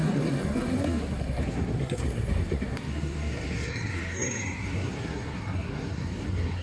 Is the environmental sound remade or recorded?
remade